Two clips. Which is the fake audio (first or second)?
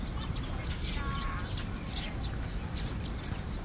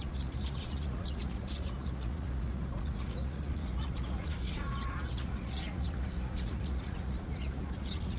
second